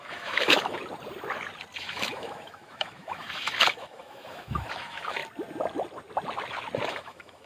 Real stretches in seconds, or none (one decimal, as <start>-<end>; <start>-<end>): 0.8-1.8; 5.2-6.9